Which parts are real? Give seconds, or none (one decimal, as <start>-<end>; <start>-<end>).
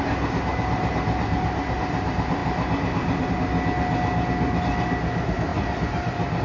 0.0-6.4